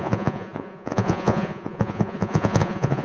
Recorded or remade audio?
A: remade